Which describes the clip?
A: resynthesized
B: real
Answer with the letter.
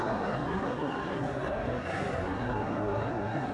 A